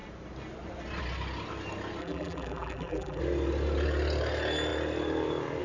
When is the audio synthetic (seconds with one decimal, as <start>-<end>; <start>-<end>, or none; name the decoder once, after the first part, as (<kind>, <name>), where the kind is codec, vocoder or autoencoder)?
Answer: 2.0-3.2 (vocoder, BigVGAN v2)